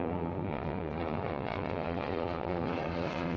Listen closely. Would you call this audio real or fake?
fake